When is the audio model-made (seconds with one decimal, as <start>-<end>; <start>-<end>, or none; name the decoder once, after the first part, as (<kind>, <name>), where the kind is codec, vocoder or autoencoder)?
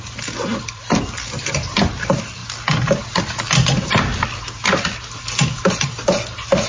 0.0-2.4 (vocoder, BigVGAN v2); 3.0-4.1; 5.2-6.7